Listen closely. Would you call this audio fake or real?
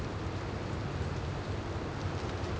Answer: real